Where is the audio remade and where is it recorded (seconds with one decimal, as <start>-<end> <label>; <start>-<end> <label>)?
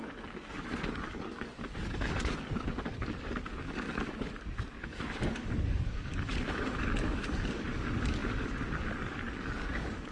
0.0-10.1 remade